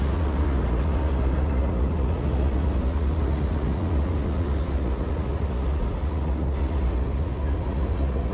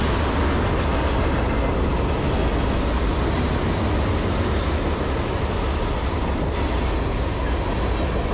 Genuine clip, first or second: second